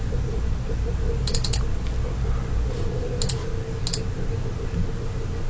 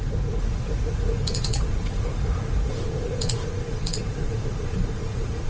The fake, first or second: second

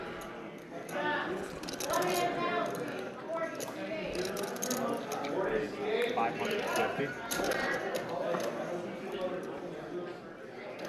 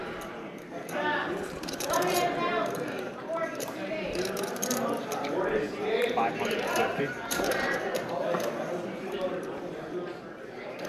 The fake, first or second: second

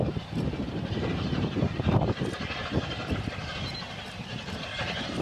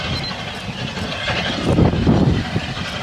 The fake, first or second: first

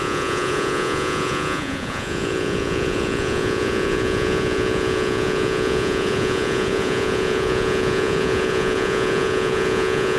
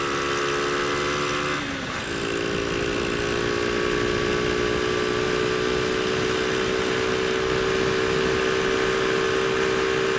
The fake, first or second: first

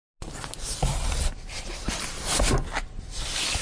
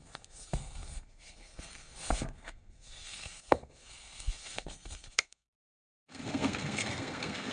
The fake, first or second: second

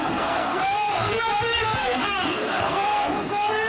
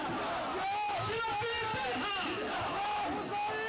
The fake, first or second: first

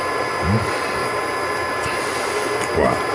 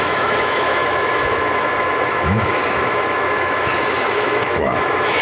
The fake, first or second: second